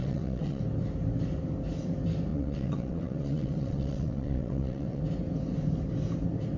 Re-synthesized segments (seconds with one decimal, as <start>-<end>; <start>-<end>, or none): 0.0-0.6; 2.3-5.0